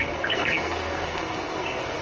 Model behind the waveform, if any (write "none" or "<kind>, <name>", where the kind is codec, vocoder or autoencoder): codec, SNAC